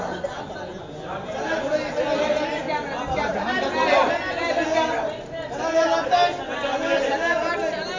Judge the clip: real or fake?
real